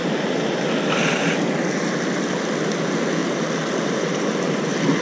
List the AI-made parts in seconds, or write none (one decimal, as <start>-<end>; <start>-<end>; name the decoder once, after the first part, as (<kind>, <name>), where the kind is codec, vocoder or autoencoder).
none